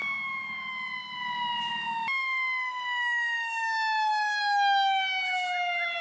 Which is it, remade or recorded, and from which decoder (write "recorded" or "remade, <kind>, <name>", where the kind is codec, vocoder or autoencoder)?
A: recorded